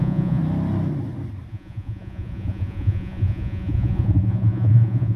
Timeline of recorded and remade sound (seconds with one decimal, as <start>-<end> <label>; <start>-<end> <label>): 0.0-0.4 remade; 0.4-1.5 recorded; 1.5-5.2 remade